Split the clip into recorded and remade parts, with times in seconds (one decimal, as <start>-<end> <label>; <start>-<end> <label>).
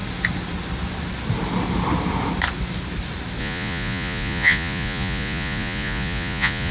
0.0-3.4 recorded; 3.4-6.7 remade